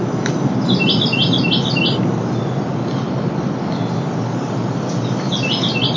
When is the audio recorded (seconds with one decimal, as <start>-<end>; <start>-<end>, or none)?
0.0-6.0